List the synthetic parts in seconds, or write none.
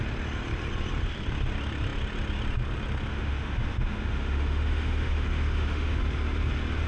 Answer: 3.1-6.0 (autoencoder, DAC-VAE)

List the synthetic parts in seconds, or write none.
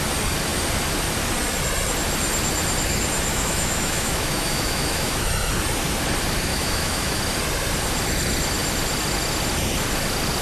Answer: 3.3-5.3 (autoencoder, DAC-VAE); 6.5-7.2